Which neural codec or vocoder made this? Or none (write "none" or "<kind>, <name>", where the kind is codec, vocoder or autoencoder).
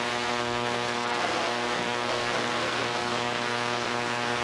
codec, SNAC